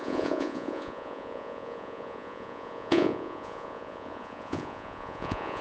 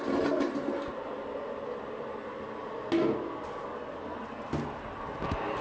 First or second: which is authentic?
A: second